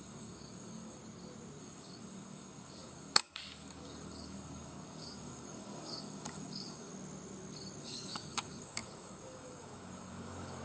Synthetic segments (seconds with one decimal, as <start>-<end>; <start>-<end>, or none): 0.0-1.0; 1.6-6.9; 7.8-10.6